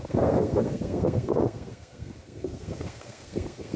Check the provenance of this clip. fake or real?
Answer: fake